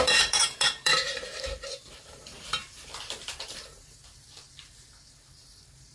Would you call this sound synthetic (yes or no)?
yes